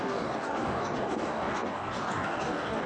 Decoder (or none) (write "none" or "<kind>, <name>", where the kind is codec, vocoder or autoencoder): codec, DAC